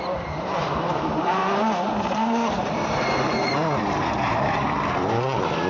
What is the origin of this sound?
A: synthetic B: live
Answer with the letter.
A